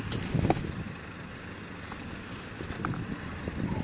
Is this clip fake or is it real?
real